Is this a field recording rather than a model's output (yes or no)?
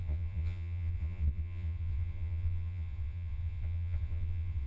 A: no